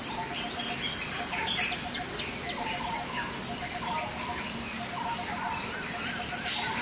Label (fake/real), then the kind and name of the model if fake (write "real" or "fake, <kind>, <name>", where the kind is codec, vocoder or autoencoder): real